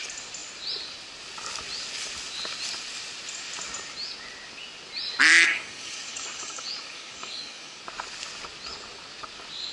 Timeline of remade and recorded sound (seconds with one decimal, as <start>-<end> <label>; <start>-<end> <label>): 0.0-5.3 recorded; 5.3-7.8 remade; 7.8-9.7 recorded